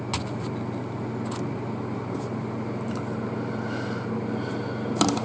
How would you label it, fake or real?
real